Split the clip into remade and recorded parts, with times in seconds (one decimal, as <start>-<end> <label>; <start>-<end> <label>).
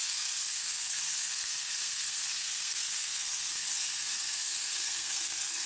0.0-5.7 remade